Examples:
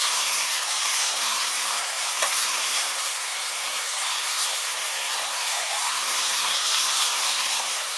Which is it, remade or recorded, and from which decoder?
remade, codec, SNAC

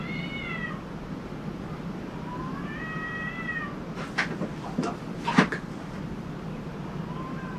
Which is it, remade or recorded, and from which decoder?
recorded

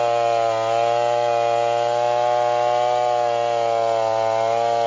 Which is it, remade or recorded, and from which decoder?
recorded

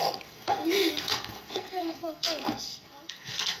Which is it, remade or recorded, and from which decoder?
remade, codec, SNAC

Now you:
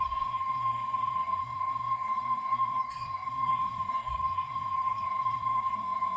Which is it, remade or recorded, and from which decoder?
remade, codec, SNAC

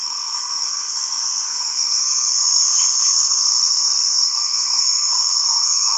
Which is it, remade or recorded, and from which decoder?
remade, codec, SNAC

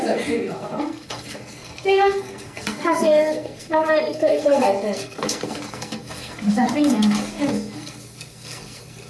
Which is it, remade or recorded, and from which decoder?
remade, codec, SNAC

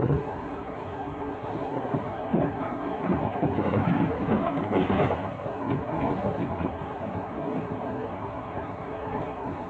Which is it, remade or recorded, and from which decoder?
remade, codec, SNAC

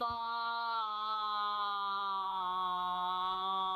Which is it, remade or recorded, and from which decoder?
remade, codec, SNAC